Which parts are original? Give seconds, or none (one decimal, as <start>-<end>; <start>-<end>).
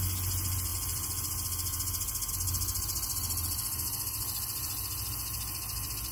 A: 0.0-6.1